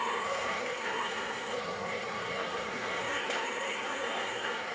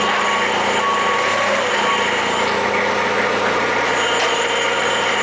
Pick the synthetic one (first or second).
first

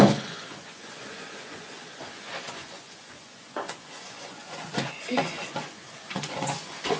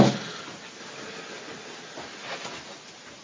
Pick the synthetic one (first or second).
first